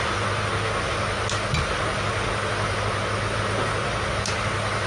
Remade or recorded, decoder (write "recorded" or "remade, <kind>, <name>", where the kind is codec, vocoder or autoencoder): recorded